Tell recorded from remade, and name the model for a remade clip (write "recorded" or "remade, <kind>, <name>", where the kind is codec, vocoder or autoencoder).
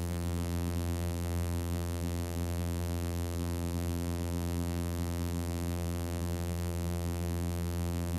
remade, vocoder, BigVGAN v2